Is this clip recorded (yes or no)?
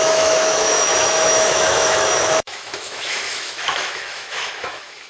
no